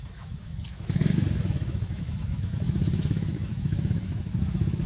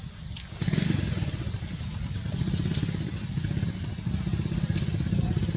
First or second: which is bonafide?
second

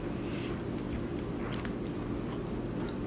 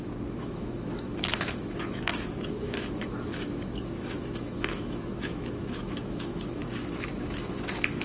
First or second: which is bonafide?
first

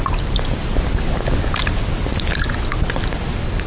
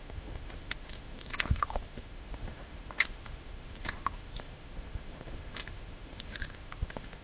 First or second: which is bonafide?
first